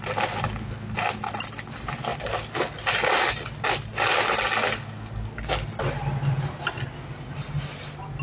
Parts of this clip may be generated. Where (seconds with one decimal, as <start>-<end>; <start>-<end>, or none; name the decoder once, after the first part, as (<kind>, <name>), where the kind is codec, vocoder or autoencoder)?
none